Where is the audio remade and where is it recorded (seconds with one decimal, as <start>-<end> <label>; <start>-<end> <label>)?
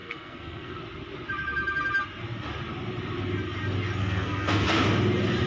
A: 0.0-0.8 remade; 0.8-4.0 recorded; 4.0-4.8 remade; 4.8-5.5 recorded